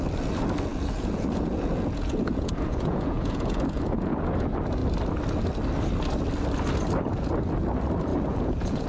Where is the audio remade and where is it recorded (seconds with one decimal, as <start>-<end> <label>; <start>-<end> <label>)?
0.0-0.7 recorded; 0.7-4.2 remade; 4.2-8.1 recorded; 8.1-8.9 remade